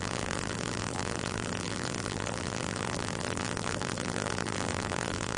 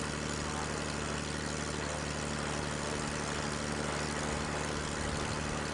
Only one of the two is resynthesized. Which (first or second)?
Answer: first